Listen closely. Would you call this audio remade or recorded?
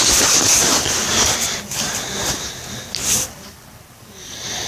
recorded